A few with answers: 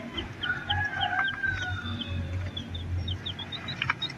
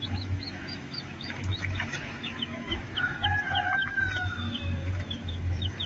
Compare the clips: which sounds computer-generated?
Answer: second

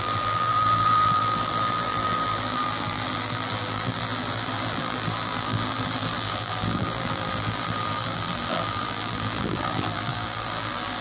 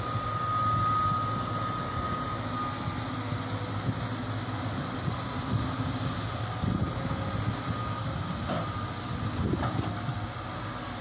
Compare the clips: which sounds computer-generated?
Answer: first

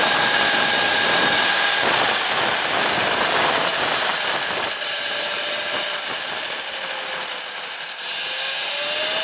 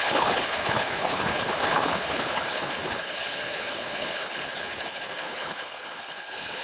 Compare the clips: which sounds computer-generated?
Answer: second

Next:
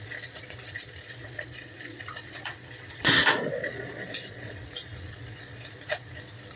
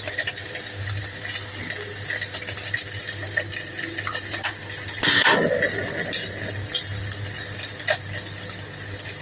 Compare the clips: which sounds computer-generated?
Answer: first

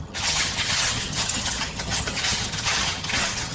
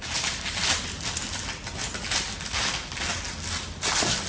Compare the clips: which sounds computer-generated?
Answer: first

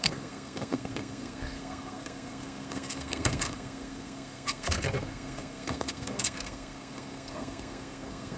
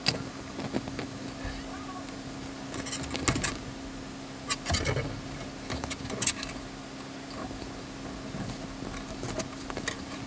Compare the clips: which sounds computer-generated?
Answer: first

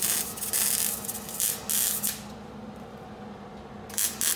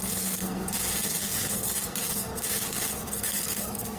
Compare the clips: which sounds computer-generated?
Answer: second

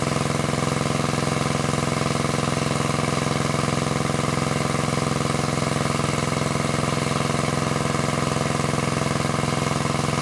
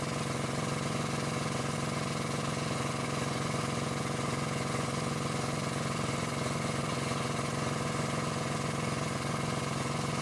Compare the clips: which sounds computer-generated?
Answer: second